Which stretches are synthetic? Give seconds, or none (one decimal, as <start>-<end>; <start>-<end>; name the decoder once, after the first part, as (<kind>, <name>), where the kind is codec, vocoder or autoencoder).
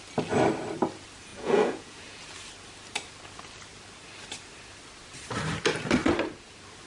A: 1.3-2.2 (vocoder, Vocos)